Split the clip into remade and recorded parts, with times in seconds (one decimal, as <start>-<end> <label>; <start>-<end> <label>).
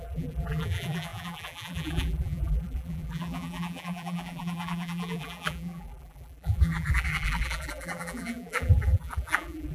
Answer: 0.0-9.7 remade